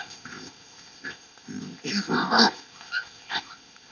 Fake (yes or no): yes